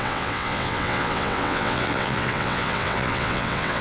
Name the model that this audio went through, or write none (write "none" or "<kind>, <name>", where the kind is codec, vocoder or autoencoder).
vocoder, WaveNeXt